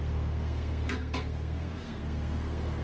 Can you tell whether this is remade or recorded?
remade